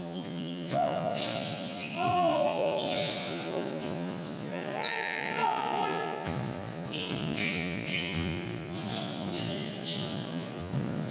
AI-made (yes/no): yes